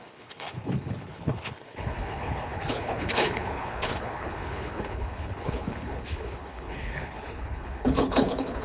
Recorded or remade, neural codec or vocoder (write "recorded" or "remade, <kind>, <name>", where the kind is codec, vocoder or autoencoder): remade, codec, HILCodec